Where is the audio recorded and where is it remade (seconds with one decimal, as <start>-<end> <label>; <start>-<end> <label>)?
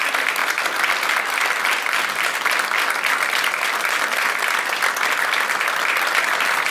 0.0-6.7 recorded